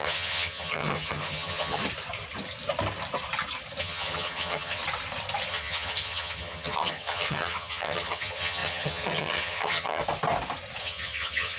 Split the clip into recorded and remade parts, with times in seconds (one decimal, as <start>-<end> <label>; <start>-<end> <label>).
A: 0.0-1.8 remade; 1.8-3.8 recorded; 3.8-4.8 remade; 4.8-5.5 recorded; 5.5-10.0 remade; 10.0-10.8 recorded; 10.8-11.6 remade